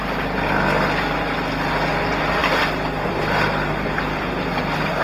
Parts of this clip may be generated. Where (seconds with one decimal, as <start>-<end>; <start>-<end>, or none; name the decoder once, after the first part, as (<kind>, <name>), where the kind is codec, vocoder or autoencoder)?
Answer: none